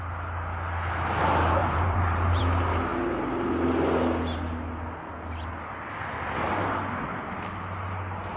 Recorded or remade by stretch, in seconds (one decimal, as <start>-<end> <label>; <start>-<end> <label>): 0.0-1.6 recorded; 1.6-2.4 remade; 2.4-8.4 recorded